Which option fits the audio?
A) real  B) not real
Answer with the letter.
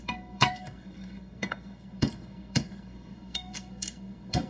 B